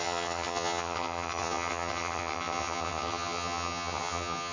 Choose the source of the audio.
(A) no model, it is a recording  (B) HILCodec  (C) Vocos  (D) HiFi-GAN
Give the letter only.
D